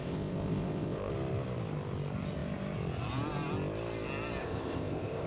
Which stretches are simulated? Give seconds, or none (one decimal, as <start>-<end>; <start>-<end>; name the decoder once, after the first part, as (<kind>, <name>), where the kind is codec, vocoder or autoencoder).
0.0-1.1 (codec, ZipCodec); 4.4-5.3